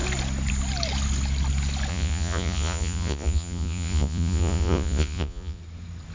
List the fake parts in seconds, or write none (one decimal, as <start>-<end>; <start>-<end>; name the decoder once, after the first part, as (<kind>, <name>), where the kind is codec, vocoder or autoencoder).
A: 1.9-5.6 (vocoder, Vocos)